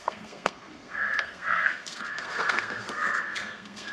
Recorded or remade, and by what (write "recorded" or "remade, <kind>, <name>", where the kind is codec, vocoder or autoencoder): remade, codec, SNAC